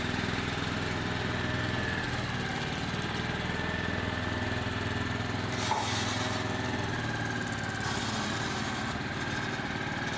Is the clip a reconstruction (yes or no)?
no